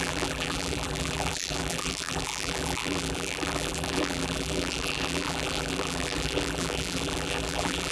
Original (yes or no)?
no